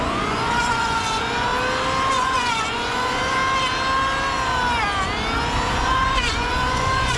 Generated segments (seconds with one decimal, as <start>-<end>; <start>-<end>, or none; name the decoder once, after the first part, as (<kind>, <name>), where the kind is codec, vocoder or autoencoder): 0.0-1.5 (vocoder, Vocos); 2.1-3.4; 5.7-7.2